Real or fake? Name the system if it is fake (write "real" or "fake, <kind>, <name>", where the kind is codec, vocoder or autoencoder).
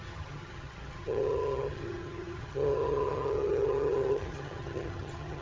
fake, vocoder, HiFi-GAN